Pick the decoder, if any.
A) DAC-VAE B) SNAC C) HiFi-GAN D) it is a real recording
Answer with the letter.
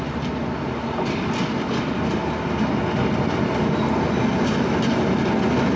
D